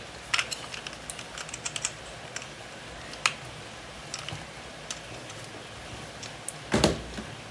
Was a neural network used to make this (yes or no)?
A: no